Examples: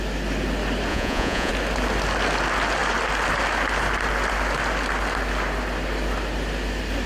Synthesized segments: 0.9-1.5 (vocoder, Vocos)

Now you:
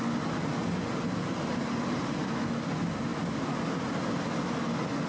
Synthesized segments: none

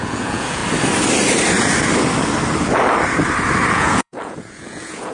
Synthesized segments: 0.0-0.6 (vocoder, Vocos); 3.7-5.1

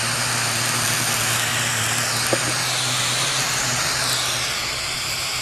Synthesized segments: none

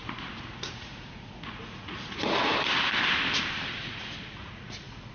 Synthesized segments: 0.0-2.5 (vocoder, Vocos); 3.8-5.1

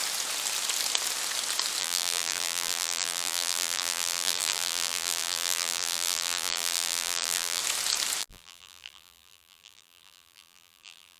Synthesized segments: 1.8-7.6 (vocoder, BigVGAN v2); 8.2-11.2

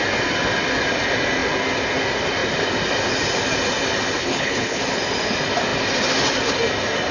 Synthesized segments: 4.2-4.8 (codec, HILCodec)